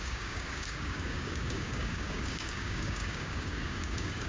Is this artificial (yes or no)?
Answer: yes